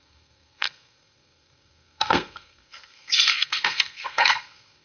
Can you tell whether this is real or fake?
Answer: fake